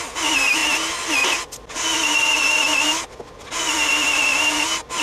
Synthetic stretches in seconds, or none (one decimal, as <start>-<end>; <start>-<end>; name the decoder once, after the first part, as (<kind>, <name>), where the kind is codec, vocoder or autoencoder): none